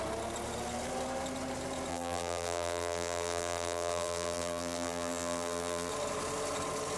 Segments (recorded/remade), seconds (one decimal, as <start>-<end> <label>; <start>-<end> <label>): 0.0-1.9 recorded; 1.9-5.9 remade; 5.9-7.0 recorded